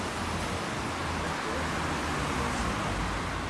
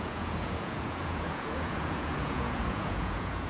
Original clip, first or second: first